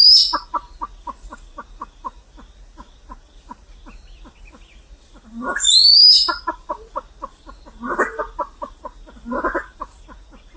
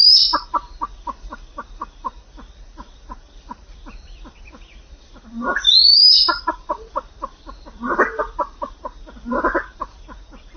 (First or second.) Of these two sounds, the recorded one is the first